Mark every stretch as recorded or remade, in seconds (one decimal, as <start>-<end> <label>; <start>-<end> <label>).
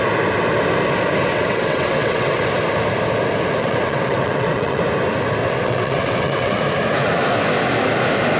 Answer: 0.0-1.3 recorded; 1.3-2.4 remade; 2.4-3.6 recorded; 3.6-4.8 remade; 4.8-5.4 recorded; 5.4-6.6 remade; 6.6-8.4 recorded